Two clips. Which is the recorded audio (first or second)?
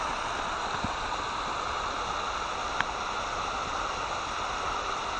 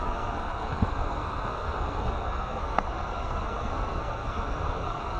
first